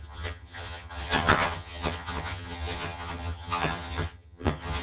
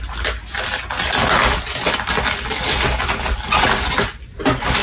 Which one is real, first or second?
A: second